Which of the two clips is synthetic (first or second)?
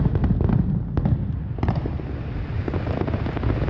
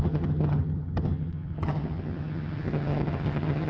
second